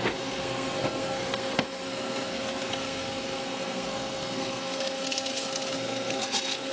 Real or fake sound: fake